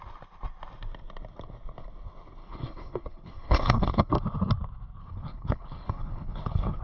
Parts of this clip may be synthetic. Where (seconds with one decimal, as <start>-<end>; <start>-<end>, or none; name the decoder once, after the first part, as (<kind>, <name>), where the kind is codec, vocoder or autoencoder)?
2.4-4.1 (codec, HILCodec); 5.0-6.8